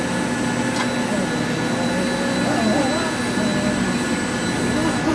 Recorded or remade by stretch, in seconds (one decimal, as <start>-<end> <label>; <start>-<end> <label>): 0.0-5.1 recorded